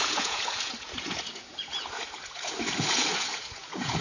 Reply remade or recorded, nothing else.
remade